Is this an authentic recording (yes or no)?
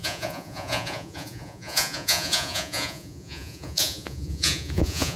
no